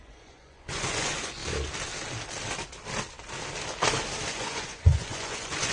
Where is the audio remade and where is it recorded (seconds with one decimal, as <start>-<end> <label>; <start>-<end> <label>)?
0.0-1.4 remade; 1.4-4.3 recorded; 4.3-5.7 remade